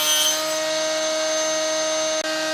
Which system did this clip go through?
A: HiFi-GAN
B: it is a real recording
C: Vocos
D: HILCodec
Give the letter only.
B